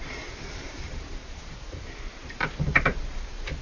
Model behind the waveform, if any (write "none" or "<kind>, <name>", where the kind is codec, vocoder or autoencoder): vocoder, BigVGAN v2